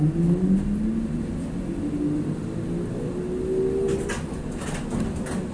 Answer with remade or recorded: recorded